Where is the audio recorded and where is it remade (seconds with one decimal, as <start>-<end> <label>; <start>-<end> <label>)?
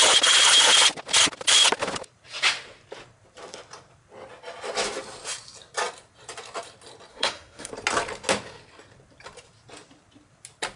0.0-7.1 recorded; 7.1-7.7 remade; 7.7-10.8 recorded